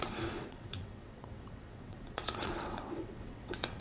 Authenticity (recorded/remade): remade